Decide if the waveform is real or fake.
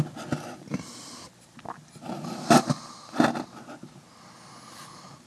real